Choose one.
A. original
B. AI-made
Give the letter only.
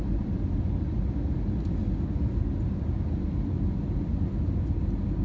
A